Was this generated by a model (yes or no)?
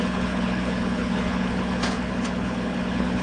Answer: yes